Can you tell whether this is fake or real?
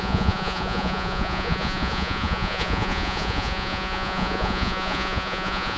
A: fake